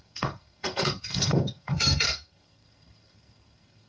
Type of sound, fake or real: fake